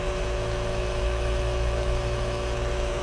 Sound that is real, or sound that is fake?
fake